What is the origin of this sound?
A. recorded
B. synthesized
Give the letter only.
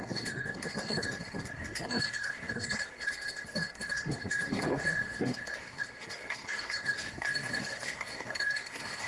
B